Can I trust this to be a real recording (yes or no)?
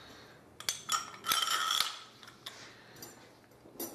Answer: yes